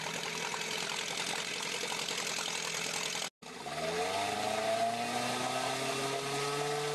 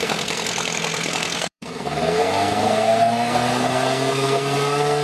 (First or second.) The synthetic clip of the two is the second